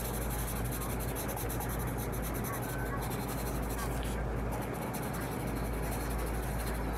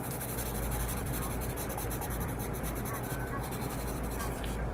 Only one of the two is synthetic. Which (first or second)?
second